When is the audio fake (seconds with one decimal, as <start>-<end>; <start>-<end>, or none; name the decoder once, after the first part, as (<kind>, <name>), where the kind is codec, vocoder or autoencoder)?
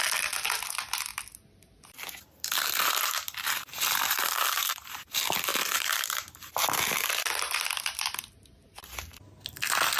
3.7-5.1 (vocoder, BigVGAN v2); 5.5-6.5